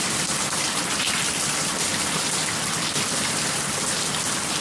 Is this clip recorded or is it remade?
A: recorded